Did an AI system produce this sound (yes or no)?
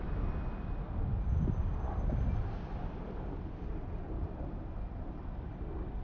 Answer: no